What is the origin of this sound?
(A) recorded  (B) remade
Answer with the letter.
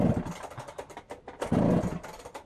A